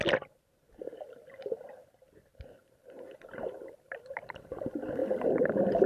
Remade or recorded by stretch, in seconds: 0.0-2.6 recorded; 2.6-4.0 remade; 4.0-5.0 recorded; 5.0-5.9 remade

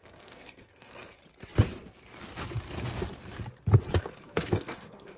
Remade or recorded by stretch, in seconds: 0.0-1.2 remade; 1.2-4.0 recorded; 4.0-5.2 remade

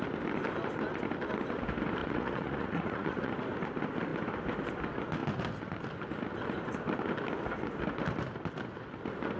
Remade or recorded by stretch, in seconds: 0.0-2.0 recorded; 2.0-3.3 remade; 3.3-9.4 recorded

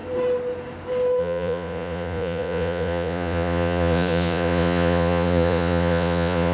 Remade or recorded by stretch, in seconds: 0.0-1.2 recorded; 1.2-6.5 remade

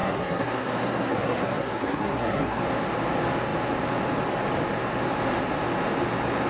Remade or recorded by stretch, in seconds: 0.0-2.6 remade; 2.6-6.5 recorded